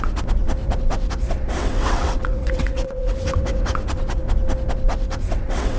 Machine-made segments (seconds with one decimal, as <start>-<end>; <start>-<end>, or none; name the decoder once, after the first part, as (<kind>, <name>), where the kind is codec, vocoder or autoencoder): 0.6-1.1 (vocoder, WaveNeXt); 1.6-4.2; 4.9-5.8